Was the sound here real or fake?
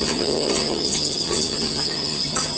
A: fake